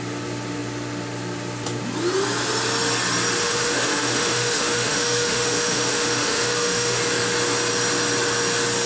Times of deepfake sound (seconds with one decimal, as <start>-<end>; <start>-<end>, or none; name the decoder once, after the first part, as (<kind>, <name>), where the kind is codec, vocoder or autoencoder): 3.4-7.0 (autoencoder, DAC-VAE)